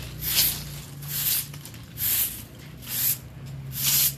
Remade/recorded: recorded